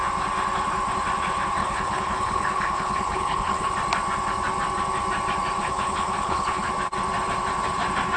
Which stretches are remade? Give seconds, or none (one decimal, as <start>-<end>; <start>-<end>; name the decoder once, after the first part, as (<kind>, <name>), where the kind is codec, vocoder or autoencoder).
1.6-3.7 (codec, HILCodec); 5.6-6.7